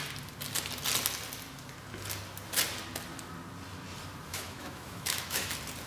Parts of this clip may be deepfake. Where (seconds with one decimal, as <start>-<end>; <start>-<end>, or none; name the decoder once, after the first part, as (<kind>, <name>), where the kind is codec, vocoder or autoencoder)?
4.3-5.5 (autoencoder, DAC-VAE)